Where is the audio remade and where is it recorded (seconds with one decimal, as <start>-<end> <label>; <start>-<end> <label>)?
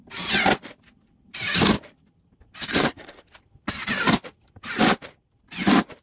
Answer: 0.0-2.7 recorded; 2.7-3.3 remade; 3.3-6.0 recorded